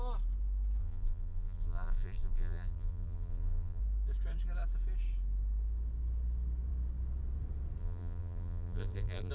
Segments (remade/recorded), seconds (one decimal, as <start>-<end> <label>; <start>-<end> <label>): 0.0-0.8 recorded; 0.8-3.8 remade; 3.8-7.8 recorded; 7.8-9.3 remade

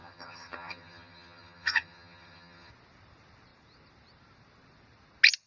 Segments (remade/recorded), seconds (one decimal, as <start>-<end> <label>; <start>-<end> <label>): 0.0-2.7 remade; 2.7-5.5 recorded

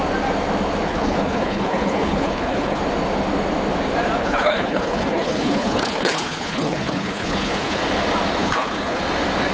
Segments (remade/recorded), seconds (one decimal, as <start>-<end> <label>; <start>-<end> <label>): 0.0-0.9 recorded; 0.9-2.8 remade; 2.8-4.2 recorded; 4.2-7.8 remade; 7.8-8.4 recorded; 8.4-9.0 remade; 9.0-9.5 recorded

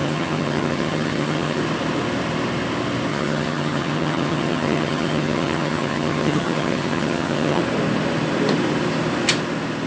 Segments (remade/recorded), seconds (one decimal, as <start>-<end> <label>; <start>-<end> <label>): 0.0-1.6 remade; 1.6-3.1 recorded; 3.1-7.6 remade; 7.6-9.9 recorded

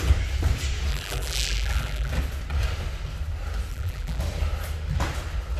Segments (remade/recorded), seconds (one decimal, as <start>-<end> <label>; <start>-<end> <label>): 0.0-0.9 recorded; 0.9-2.1 remade; 2.1-3.7 recorded; 3.7-4.2 remade; 4.2-5.6 recorded

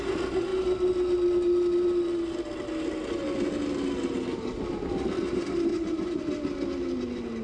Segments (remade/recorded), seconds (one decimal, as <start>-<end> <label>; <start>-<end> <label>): 0.0-5.7 recorded; 5.7-6.2 remade; 6.2-7.4 recorded

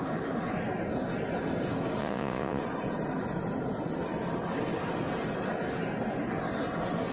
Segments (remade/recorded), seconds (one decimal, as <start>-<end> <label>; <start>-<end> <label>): 0.0-2.0 recorded; 2.0-2.6 remade; 2.6-7.1 recorded

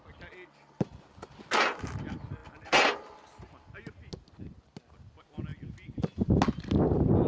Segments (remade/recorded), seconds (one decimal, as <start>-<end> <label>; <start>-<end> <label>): 0.0-7.3 recorded